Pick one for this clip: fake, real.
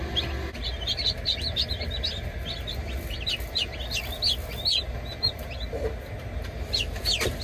real